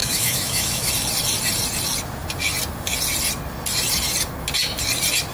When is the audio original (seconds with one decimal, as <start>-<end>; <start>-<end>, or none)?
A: 0.9-5.3